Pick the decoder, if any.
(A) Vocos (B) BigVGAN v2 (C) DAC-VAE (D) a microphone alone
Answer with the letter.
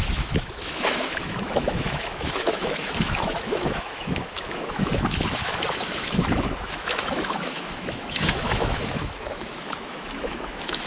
C